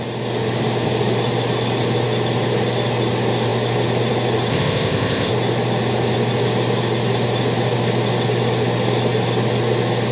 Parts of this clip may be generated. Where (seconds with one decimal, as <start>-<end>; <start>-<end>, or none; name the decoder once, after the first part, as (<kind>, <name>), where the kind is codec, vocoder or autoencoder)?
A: 4.5-5.3 (codec, ZipCodec)